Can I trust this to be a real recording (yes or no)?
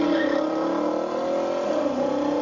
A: yes